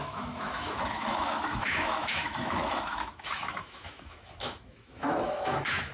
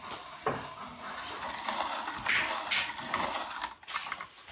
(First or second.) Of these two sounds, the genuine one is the second